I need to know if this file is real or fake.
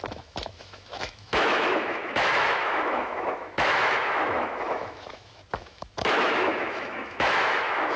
fake